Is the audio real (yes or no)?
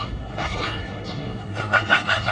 no